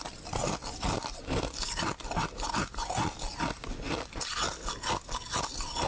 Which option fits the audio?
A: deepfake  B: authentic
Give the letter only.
B